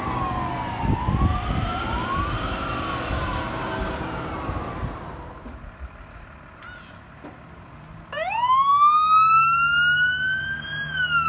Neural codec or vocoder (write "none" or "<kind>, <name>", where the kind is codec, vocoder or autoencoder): none